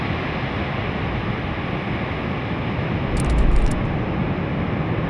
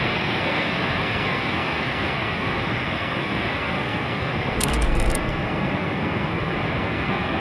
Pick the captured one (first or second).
first